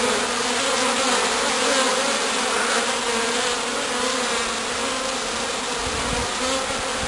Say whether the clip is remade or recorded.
recorded